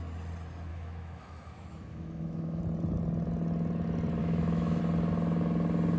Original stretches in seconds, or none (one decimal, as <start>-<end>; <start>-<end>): 0.0-0.7; 2.6-4.2; 4.8-6.0